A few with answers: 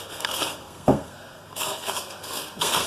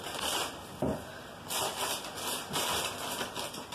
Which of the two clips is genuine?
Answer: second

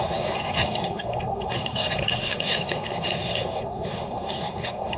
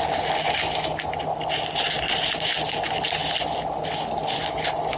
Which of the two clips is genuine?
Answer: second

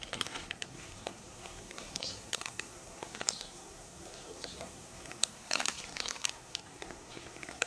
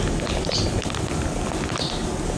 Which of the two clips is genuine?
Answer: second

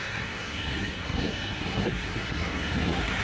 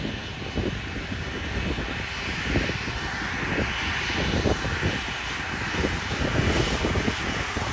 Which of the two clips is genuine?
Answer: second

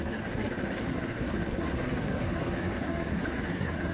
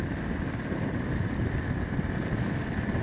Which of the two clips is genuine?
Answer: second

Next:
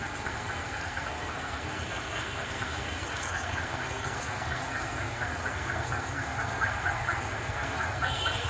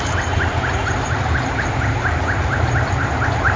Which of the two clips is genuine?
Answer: second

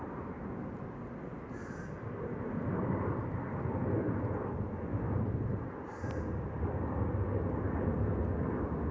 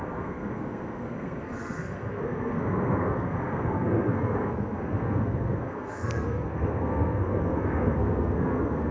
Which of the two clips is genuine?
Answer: first